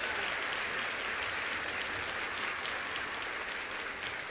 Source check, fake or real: real